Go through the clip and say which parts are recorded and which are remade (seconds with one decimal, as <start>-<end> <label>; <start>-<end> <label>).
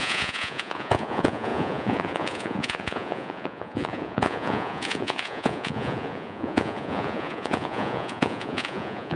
0.0-9.2 remade